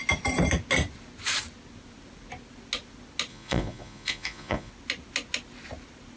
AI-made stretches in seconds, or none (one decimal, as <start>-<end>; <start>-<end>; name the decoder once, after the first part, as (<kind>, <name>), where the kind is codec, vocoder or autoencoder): 3.3-4.7 (vocoder, Vocos)